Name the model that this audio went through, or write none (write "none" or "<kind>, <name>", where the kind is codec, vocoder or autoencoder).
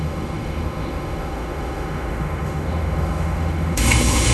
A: autoencoder, DAC-VAE